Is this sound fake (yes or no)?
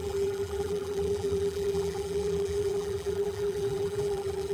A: yes